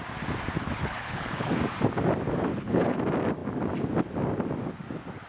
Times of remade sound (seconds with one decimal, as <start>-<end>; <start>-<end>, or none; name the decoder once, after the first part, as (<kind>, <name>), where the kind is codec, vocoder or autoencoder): 0.6-1.5 (codec, HILCodec); 2.5-3.0